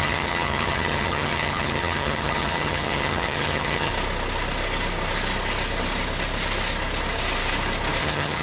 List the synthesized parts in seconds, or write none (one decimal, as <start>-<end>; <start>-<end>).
0.0-3.9; 8.0-8.4